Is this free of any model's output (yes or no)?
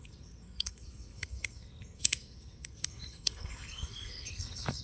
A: no